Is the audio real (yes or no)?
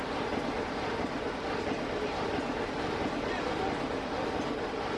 yes